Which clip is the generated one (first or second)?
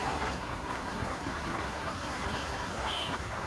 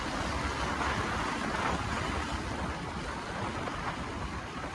first